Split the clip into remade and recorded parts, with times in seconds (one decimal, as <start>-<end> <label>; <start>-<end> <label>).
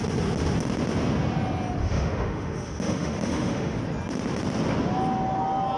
0.0-1.8 recorded; 1.8-3.8 remade; 3.8-5.8 recorded